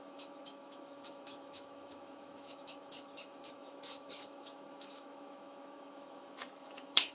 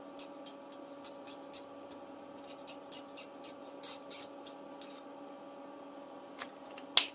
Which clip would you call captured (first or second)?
second